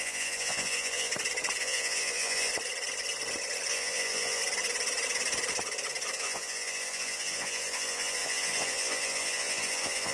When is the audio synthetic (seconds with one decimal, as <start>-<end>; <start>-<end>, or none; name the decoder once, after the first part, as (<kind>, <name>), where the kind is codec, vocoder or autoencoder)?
0.0-1.1 (vocoder, Vocos); 1.6-2.5; 3.7-4.4; 6.2-10.1

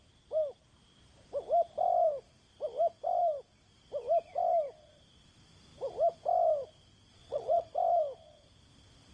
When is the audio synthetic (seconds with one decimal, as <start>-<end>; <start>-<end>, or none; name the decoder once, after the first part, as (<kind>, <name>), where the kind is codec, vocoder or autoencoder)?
7.1-7.7 (vocoder, WaveNeXt)

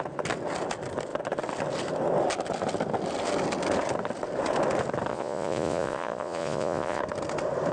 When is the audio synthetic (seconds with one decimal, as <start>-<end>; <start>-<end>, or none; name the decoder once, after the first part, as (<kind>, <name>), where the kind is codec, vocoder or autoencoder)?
5.1-7.0 (vocoder, Vocos)

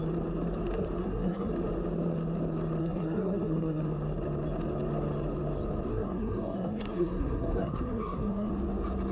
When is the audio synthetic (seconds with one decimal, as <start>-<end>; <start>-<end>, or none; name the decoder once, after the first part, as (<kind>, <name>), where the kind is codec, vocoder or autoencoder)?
1.0-1.5 (codec, SNAC); 2.8-3.8; 5.9-8.5

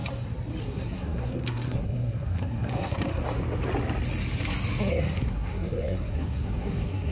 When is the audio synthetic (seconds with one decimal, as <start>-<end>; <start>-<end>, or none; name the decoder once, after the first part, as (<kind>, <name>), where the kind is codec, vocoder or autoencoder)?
0.6-3.2 (codec, SNAC); 4.9-7.1